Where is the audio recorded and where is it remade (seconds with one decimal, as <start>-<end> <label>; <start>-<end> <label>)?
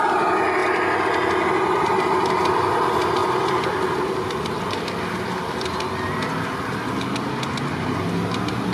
0.0-8.7 recorded